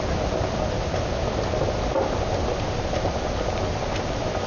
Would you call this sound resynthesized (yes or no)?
no